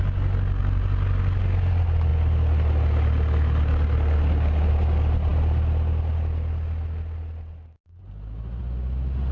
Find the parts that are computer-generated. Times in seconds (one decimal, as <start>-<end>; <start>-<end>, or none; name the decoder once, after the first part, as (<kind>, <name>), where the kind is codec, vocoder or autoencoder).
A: none